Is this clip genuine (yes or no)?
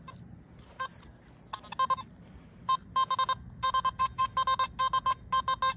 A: yes